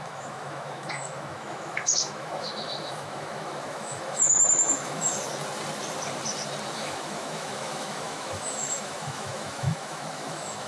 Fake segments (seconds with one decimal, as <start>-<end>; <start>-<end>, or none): 0.0-5.1; 6.7-10.7